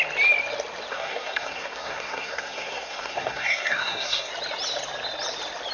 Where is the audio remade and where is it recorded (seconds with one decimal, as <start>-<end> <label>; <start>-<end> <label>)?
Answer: 0.0-0.9 recorded; 0.9-4.3 remade; 4.3-5.7 recorded